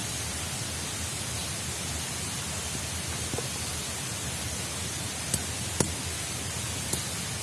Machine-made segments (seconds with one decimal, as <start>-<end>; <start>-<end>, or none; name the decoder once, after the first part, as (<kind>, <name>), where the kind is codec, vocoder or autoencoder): none